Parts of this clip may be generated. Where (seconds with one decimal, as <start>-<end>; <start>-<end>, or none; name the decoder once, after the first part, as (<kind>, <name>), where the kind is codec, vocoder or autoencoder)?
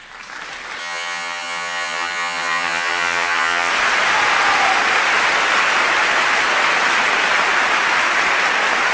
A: 0.8-3.7 (vocoder, HiFi-GAN)